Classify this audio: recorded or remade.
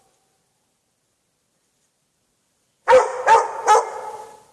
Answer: recorded